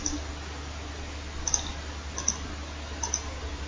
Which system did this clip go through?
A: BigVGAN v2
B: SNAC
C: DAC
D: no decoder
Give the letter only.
D